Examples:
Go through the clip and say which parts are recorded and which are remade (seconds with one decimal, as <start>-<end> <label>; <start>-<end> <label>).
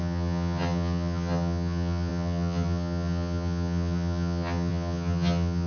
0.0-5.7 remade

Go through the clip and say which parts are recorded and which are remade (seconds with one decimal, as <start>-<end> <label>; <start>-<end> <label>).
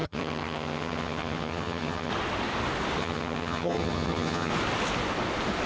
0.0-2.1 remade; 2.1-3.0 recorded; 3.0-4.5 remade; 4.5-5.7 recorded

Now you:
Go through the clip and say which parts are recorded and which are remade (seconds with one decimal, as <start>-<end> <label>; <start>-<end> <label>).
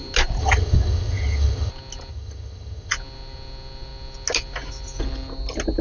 0.0-0.4 recorded; 0.4-1.7 remade; 1.7-2.1 recorded; 2.1-2.9 remade; 2.9-5.8 recorded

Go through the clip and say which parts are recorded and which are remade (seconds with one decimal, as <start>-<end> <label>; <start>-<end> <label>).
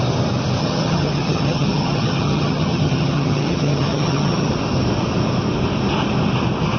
0.0-0.6 recorded; 0.6-4.5 remade; 4.5-6.8 recorded